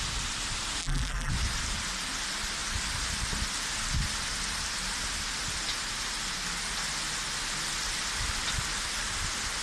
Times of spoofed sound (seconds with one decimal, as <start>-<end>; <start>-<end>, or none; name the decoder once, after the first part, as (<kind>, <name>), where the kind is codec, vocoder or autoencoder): 0.8-1.3 (vocoder, BigVGAN v2)